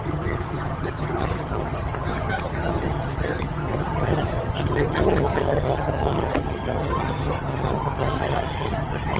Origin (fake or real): fake